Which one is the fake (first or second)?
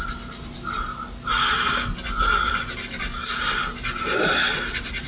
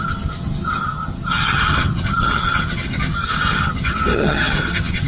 second